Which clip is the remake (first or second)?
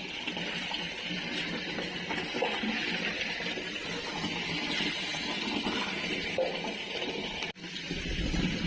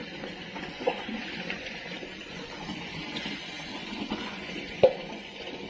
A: second